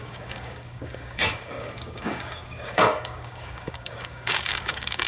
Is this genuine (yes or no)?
no